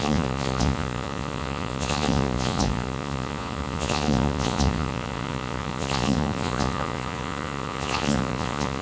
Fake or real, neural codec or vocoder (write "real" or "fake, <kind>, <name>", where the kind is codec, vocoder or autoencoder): fake, vocoder, Vocos